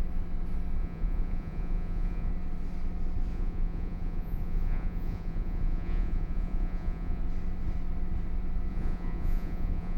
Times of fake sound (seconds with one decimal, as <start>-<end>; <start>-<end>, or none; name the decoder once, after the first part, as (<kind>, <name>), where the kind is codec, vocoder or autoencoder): 0.8-2.3 (vocoder, Vocos); 3.3-7.2; 8.7-10.0